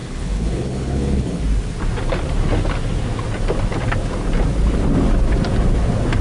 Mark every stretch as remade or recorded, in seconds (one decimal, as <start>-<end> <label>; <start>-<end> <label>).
0.0-1.4 remade; 1.4-6.2 recorded